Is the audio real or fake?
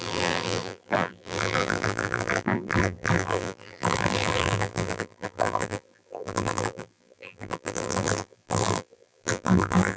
fake